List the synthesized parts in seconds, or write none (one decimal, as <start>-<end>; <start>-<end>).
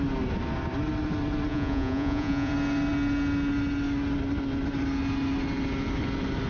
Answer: 1.5-2.5